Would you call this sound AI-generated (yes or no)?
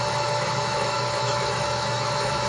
yes